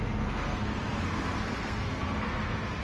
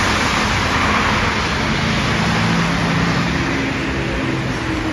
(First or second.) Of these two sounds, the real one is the second